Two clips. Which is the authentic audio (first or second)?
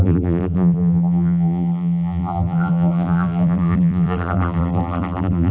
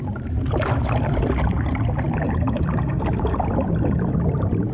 second